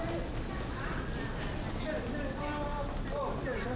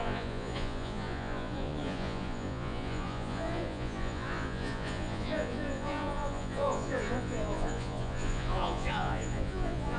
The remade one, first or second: second